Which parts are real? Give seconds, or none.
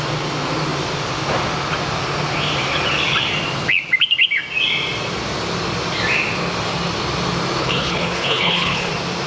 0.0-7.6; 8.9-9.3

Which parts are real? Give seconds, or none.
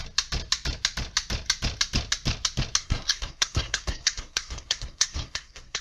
0.0-2.8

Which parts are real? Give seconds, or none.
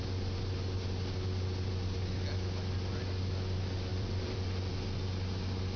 0.0-3.9; 4.7-5.8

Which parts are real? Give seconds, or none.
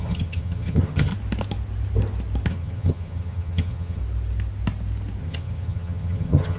1.1-2.5; 4.0-5.2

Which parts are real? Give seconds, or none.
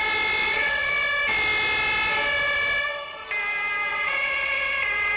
0.0-0.4; 0.9-3.9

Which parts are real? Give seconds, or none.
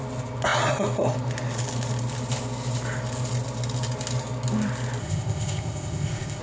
0.0-5.0